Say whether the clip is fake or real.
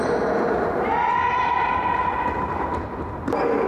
real